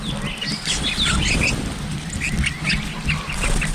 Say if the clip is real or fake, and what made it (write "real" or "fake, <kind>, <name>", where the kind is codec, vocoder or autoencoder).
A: real